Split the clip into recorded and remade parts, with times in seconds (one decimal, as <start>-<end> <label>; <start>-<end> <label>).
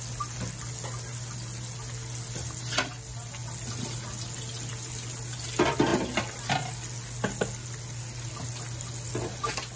0.0-9.8 recorded